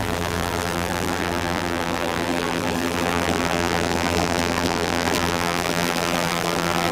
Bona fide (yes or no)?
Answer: no